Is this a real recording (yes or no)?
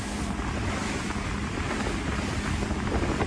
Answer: yes